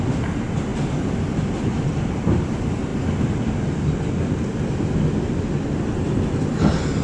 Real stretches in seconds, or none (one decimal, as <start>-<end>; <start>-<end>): 0.0-7.0